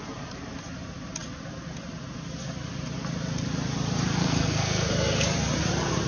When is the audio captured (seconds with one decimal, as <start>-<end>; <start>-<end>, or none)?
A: 0.0-4.2; 4.9-6.1